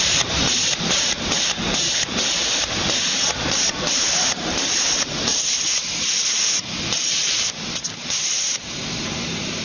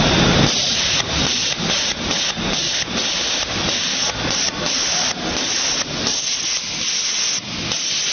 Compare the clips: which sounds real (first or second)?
second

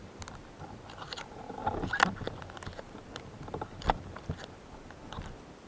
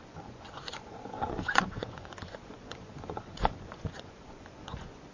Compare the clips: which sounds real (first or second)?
first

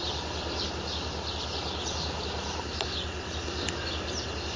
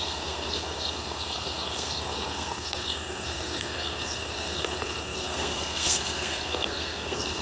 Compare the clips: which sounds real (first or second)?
first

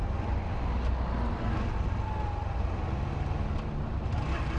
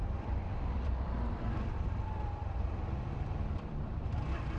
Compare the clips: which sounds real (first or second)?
first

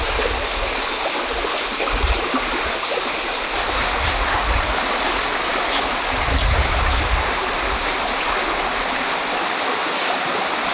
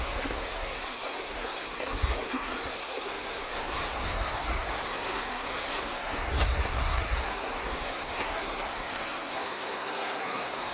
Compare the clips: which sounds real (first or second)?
first